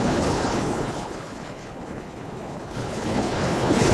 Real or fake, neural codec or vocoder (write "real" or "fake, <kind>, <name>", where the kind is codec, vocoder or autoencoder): fake, codec, HILCodec